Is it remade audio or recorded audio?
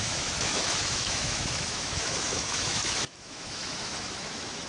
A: remade